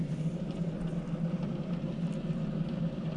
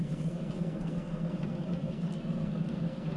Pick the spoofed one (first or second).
second